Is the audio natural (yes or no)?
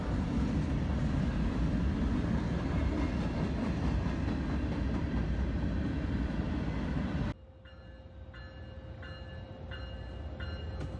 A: yes